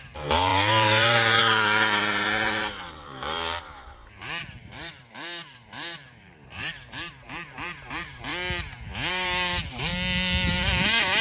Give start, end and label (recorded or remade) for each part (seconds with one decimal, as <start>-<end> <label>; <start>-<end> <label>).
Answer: 0.0-8.3 remade; 8.3-9.1 recorded; 9.1-9.9 remade; 9.9-10.5 recorded; 10.5-11.2 remade